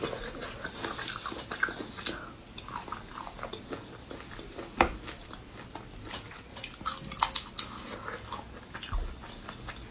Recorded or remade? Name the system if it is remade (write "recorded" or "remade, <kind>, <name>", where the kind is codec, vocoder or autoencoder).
recorded